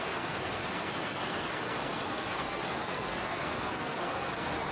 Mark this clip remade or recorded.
remade